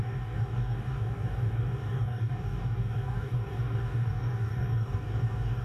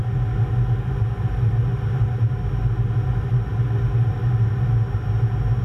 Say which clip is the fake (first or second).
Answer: first